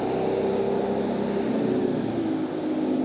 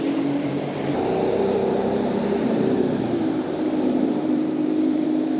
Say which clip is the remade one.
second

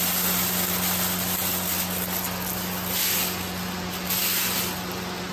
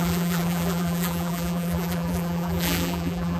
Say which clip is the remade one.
second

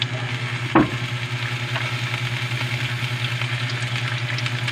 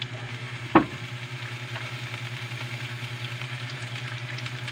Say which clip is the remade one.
second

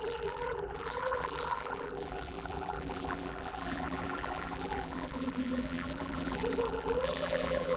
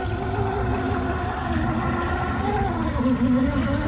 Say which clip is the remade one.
first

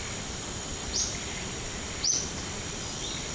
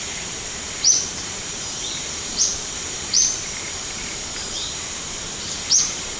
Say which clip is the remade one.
second